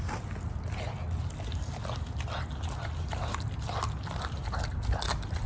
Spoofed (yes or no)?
no